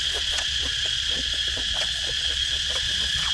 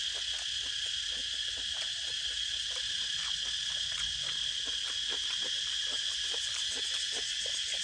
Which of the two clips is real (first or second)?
second